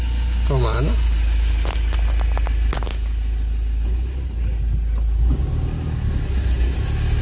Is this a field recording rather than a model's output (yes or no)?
yes